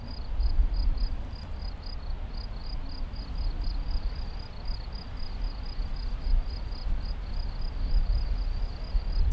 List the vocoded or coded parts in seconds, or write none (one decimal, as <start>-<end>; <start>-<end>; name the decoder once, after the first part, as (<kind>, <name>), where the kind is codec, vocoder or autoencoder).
none